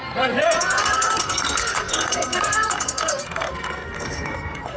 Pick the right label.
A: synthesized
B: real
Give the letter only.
A